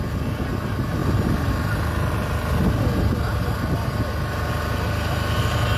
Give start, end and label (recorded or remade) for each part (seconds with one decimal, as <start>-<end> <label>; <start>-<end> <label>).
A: 0.0-5.8 recorded

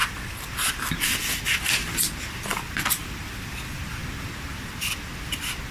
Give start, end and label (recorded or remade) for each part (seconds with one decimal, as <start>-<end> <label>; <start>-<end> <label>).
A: 0.0-1.3 remade; 1.3-2.5 recorded; 2.5-4.3 remade; 4.3-5.7 recorded

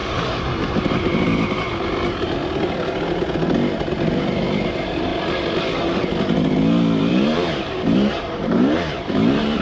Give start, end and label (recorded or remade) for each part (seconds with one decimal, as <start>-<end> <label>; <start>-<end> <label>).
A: 0.0-2.4 remade; 2.4-4.6 recorded; 4.6-5.1 remade; 5.1-7.0 recorded; 7.0-9.6 remade

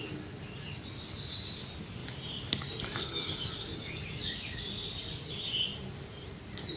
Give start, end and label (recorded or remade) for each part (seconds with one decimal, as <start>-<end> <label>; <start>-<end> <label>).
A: 0.0-5.7 recorded; 5.7-6.8 remade

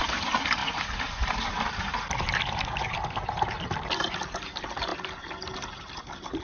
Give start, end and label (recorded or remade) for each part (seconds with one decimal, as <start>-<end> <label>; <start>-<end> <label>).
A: 0.0-0.6 recorded; 0.6-2.8 remade; 2.8-6.4 recorded

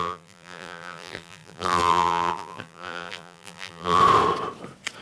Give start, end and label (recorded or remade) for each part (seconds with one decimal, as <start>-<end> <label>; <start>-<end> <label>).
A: 0.0-4.0 remade; 4.0-5.0 recorded